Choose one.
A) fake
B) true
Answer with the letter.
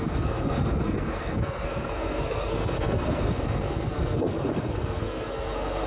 A